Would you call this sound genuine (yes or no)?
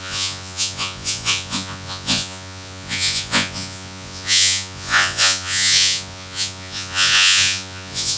no